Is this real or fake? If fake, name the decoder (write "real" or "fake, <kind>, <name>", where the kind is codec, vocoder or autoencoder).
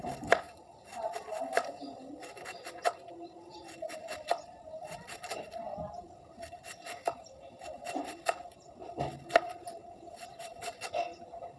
real